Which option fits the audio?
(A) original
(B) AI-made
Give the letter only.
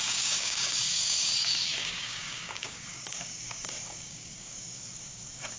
B